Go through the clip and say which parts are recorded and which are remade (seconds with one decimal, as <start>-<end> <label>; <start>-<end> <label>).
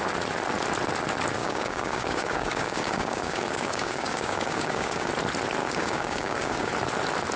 0.0-1.4 recorded; 1.4-5.1 remade; 5.1-5.6 recorded; 5.6-6.7 remade; 6.7-7.4 recorded